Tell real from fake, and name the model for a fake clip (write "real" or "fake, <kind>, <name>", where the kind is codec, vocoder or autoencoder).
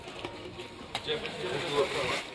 real